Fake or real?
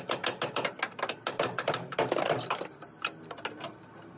real